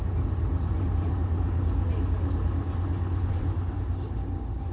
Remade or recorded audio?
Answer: recorded